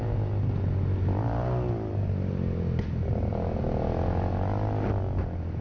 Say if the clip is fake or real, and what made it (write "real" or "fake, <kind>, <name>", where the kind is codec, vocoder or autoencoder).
real